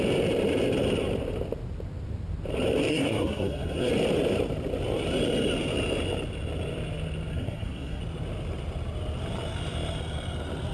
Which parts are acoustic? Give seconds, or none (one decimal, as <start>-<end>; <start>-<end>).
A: 0.0-2.9; 3.9-7.3; 8.0-10.7